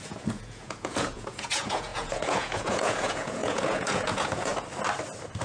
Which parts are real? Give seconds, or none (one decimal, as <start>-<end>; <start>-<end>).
4.5-5.4